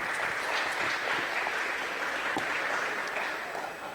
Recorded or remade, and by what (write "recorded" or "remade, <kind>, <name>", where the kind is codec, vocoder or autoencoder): recorded